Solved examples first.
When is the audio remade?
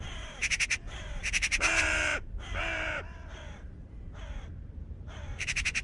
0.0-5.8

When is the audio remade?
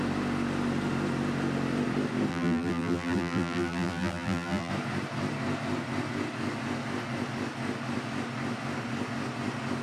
2.3-4.7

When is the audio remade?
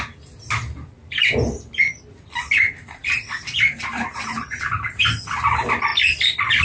1.0-1.8; 3.0-5.2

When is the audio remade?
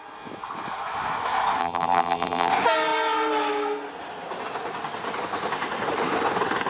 1.6-2.5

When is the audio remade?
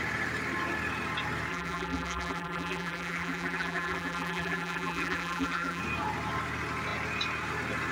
1.5-5.8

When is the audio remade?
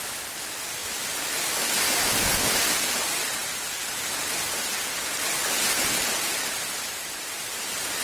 0.8-2.9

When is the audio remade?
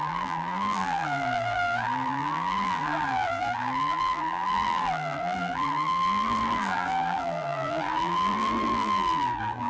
0.0-9.7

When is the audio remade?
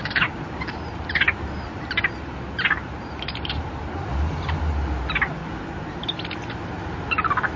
0.0-4.6; 5.4-6.0